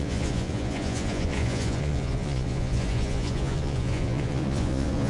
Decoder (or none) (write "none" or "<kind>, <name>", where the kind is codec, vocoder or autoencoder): vocoder, Vocos